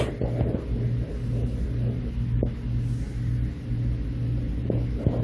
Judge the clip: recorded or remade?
recorded